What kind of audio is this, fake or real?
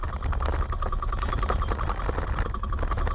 real